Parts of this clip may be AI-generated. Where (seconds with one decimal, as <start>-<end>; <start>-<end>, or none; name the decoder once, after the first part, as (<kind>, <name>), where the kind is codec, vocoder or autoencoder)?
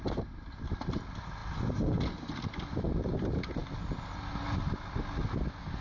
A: none